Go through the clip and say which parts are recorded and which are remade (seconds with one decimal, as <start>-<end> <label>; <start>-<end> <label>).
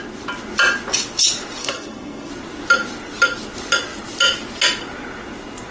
0.0-1.6 recorded; 1.6-2.3 remade; 2.3-5.7 recorded